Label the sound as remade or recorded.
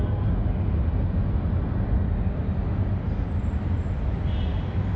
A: recorded